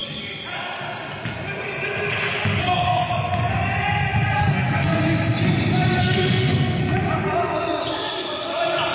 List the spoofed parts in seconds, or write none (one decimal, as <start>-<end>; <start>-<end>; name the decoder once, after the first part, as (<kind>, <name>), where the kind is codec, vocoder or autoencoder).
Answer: 2.6-3.1 (codec, SNAC); 4.4-5.0; 6.0-6.8